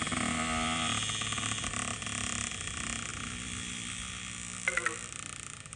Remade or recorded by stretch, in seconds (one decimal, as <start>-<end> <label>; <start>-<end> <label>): 0.0-3.1 recorded; 3.1-4.1 remade; 4.1-5.8 recorded